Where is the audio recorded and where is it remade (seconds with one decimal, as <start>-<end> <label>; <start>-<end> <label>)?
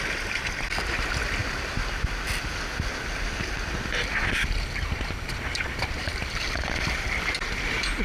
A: 0.0-8.0 recorded